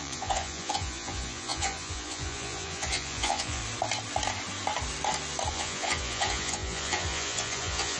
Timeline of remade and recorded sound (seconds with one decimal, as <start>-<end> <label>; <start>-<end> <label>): 0.0-3.6 remade; 3.6-5.5 recorded; 5.5-8.0 remade